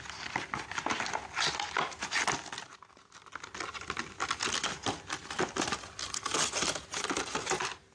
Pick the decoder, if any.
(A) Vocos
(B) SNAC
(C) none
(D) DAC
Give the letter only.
C